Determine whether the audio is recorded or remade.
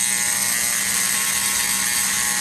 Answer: recorded